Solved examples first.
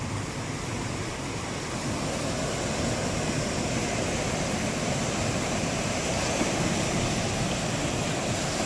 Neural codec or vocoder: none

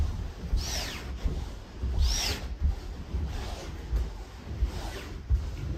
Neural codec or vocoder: none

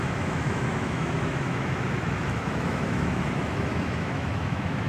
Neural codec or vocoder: autoencoder, DAC-VAE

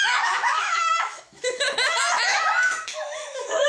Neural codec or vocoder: autoencoder, DAC-VAE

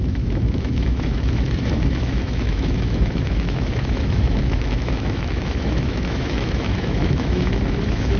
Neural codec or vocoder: autoencoder, DAC-VAE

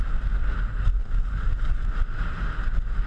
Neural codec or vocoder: none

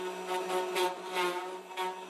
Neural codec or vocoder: none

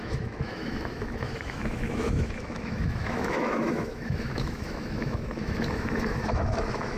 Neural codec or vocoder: autoencoder, DAC-VAE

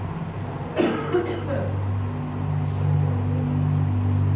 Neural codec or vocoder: none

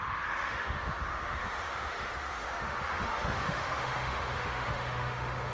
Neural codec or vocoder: autoencoder, DAC-VAE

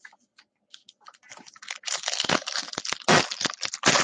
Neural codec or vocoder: none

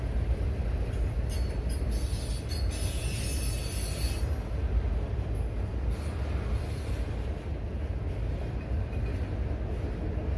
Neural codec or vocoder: none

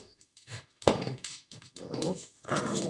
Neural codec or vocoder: autoencoder, DAC-VAE